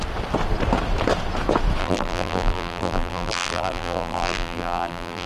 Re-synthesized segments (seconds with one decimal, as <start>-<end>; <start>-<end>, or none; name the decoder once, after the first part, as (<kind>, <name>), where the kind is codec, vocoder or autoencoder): 1.8-5.3 (vocoder, BigVGAN v2)